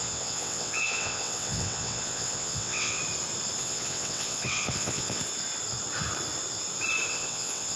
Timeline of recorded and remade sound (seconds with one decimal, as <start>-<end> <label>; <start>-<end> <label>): 0.0-3.0 remade; 3.0-3.6 recorded; 3.6-5.2 remade; 5.2-7.1 recorded; 7.1-7.8 remade